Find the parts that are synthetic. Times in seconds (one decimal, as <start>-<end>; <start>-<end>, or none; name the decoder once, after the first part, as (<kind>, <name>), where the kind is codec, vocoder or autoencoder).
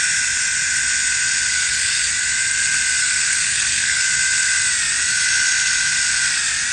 1.5-2.1 (codec, SNAC); 3.0-4.0